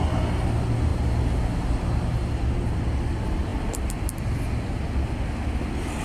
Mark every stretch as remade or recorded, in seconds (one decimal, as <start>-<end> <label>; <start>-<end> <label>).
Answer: 0.0-6.0 recorded